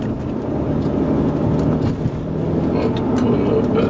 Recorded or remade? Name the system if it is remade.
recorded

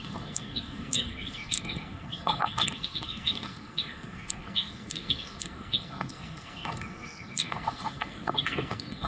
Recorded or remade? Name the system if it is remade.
remade, codec, SNAC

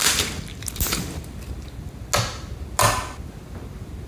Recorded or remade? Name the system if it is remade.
recorded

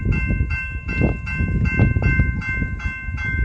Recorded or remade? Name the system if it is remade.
recorded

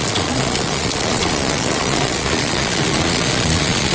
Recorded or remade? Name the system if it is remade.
remade, vocoder, Vocos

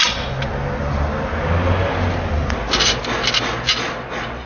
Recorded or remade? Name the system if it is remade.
recorded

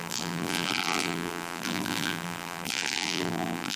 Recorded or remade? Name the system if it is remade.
remade, vocoder, BigVGAN v2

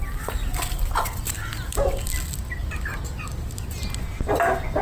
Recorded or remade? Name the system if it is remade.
recorded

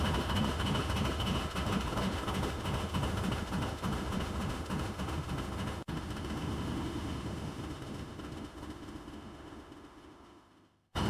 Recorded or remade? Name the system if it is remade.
remade, autoencoder, DAC-VAE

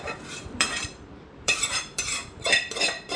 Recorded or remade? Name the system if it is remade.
remade, vocoder, BigVGAN v2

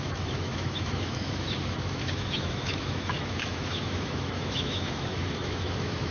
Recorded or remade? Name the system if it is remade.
remade, autoencoder, DAC-VAE